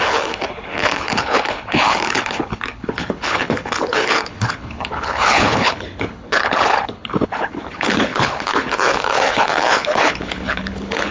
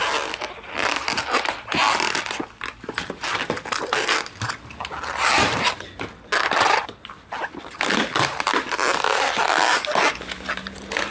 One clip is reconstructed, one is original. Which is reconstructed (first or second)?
first